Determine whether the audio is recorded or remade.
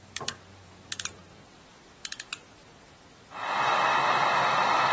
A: remade